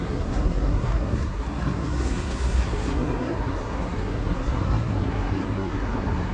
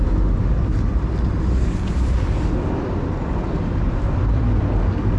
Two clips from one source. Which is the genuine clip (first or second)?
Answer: second